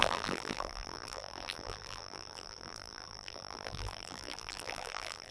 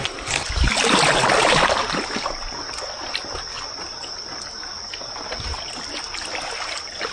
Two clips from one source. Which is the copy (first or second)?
first